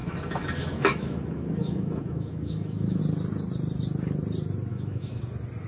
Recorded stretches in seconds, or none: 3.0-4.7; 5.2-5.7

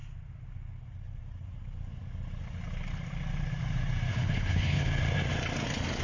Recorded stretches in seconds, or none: 0.0-4.1; 4.9-6.0

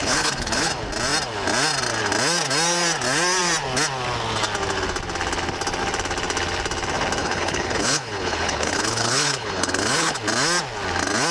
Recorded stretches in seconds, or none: 0.7-7.2; 10.2-11.3

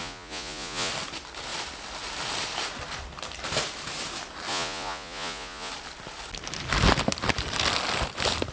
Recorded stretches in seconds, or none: 0.9-4.5; 5.7-8.5